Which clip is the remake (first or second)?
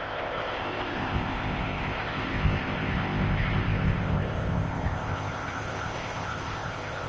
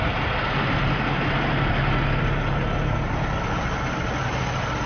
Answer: first